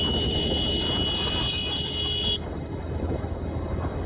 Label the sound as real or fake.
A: fake